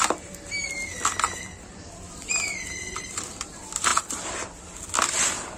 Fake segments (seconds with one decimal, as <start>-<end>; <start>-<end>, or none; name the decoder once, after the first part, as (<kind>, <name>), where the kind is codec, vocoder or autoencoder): 0.0-5.6 (vocoder, BigVGAN v2)